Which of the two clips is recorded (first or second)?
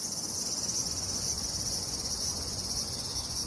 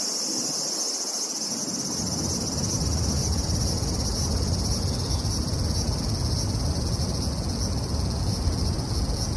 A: second